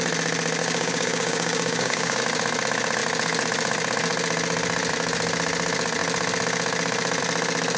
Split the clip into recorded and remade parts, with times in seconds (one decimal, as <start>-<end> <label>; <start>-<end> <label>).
0.0-0.6 recorded; 0.6-2.2 remade; 2.2-7.8 recorded